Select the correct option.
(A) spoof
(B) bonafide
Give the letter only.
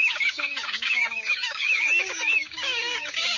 A